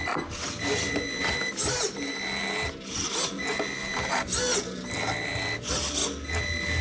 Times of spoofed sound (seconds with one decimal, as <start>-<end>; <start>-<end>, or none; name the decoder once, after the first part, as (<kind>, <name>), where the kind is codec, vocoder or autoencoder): 1.6-2.1 (vocoder, BigVGAN v2)